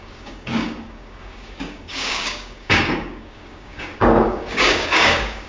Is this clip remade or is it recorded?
remade